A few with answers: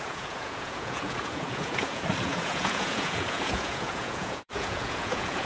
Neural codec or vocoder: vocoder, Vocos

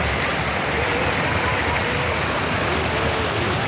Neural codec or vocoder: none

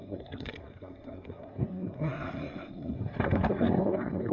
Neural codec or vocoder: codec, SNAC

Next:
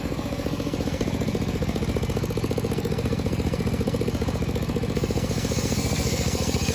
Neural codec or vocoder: codec, SNAC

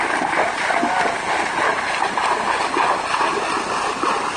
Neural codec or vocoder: none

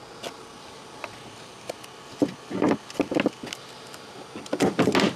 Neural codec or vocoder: none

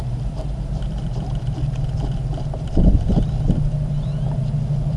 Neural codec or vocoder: vocoder, BigVGAN v2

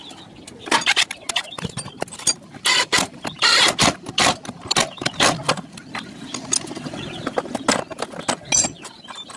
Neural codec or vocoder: none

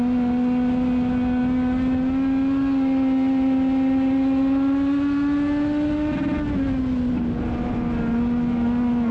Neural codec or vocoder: none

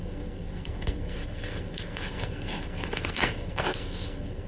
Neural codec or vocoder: codec, SNAC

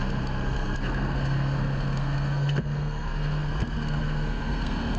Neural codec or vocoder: codec, SNAC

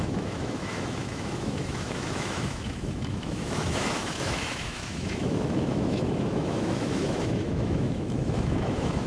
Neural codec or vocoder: autoencoder, DAC-VAE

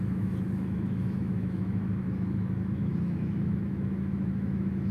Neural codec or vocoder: autoencoder, DAC-VAE